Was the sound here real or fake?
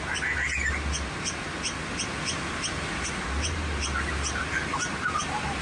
real